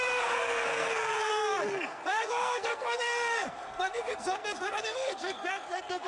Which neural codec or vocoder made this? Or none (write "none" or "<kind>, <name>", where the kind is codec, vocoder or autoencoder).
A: codec, SNAC